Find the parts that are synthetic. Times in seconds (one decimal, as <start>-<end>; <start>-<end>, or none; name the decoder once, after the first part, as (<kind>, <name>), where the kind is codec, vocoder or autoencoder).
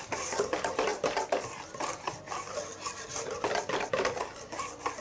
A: none